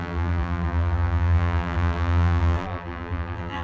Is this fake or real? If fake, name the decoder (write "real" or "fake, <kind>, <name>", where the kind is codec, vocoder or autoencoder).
fake, vocoder, BigVGAN v2